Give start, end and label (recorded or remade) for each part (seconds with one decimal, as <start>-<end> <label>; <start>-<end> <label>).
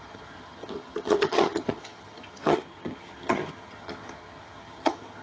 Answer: 0.0-5.2 remade